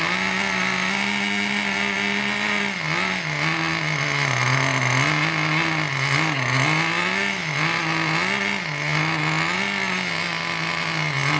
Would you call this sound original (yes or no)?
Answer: yes